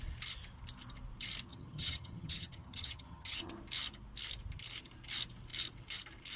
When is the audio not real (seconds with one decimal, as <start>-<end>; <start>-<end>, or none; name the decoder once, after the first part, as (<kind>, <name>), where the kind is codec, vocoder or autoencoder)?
1.5-3.5 (vocoder, HiFi-GAN)